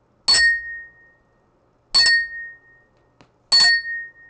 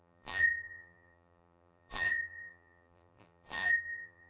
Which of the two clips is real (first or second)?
first